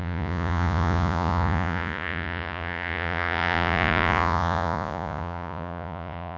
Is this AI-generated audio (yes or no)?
yes